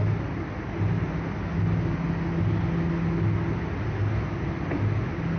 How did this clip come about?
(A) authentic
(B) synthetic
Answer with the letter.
A